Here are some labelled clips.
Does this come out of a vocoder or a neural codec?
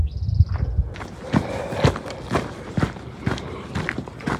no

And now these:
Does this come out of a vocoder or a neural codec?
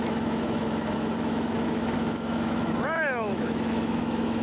yes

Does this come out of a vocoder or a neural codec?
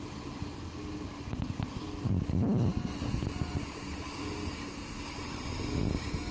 no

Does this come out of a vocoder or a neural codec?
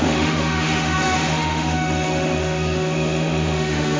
yes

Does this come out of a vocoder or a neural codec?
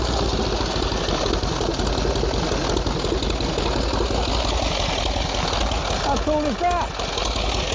no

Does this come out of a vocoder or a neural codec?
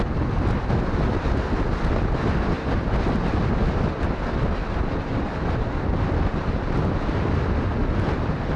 no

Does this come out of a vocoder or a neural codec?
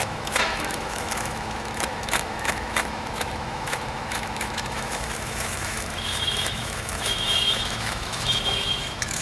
yes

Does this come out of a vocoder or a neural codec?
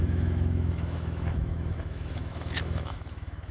yes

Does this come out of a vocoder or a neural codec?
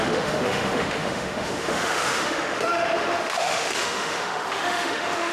yes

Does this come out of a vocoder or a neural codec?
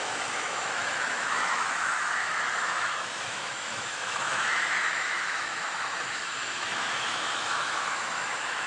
yes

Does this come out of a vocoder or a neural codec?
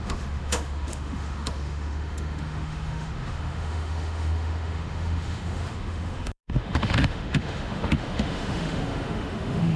yes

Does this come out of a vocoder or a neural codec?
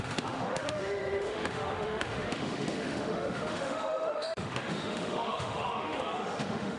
yes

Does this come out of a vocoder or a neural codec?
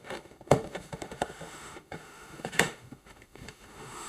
yes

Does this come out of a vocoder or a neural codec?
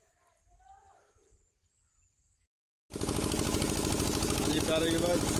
no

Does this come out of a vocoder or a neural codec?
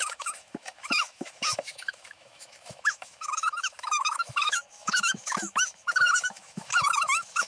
yes